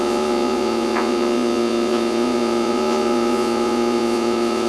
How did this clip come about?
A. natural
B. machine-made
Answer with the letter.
B